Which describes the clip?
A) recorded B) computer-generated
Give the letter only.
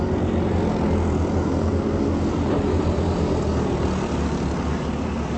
A